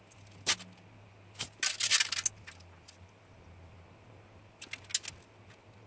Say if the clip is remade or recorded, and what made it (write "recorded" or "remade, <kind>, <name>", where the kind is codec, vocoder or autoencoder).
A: recorded